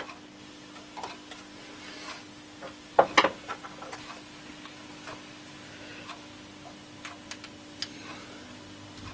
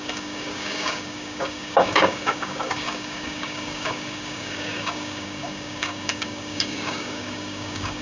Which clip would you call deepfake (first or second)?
second